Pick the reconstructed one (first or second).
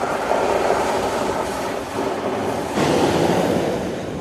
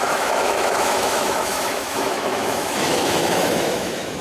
second